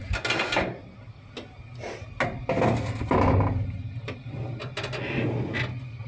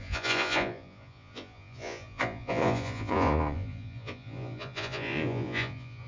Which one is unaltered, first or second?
first